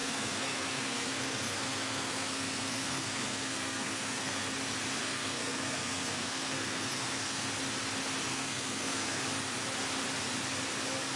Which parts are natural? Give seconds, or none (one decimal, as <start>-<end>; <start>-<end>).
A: 4.5-5.0; 7.5-8.3; 9.2-11.2